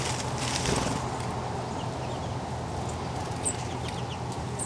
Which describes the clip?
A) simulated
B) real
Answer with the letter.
B